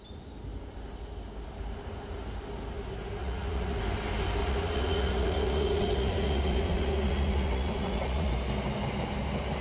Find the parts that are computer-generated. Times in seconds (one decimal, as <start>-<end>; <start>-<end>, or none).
3.2-3.8; 4.4-8.3